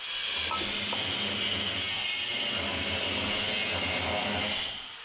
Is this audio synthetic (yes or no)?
no